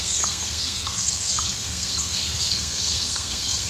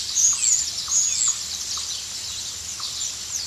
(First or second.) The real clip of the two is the second